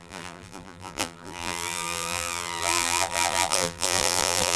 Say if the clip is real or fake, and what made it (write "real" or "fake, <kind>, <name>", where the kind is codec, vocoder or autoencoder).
fake, vocoder, BigVGAN v2